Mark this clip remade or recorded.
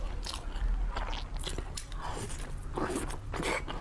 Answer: recorded